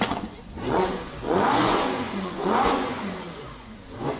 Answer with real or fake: fake